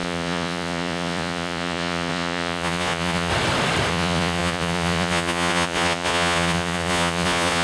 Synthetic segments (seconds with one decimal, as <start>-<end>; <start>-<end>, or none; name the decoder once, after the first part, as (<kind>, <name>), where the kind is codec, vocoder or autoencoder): 0.0-3.3 (vocoder, Vocos); 3.9-7.6